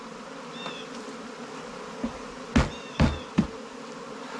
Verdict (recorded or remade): recorded